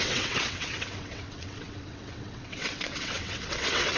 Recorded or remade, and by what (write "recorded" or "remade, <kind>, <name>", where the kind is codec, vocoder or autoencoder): remade, vocoder, WaveNeXt